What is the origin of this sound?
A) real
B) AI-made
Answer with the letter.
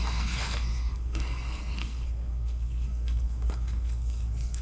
B